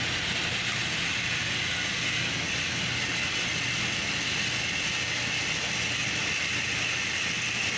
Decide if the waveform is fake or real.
real